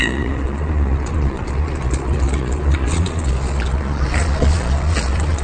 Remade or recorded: remade